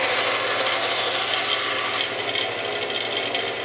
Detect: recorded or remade recorded